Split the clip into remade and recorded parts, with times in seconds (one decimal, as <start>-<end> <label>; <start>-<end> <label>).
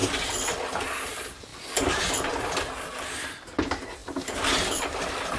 0.0-5.4 recorded